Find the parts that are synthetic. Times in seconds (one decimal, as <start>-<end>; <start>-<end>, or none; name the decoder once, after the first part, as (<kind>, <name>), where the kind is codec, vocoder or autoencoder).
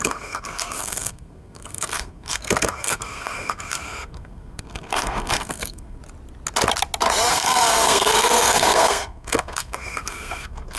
0.0-6.0 (codec, SNAC); 7.3-10.8